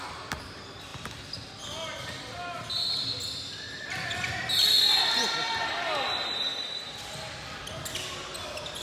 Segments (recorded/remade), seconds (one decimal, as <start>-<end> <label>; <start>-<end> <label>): 0.0-8.8 recorded